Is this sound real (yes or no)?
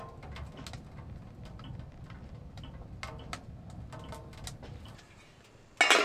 yes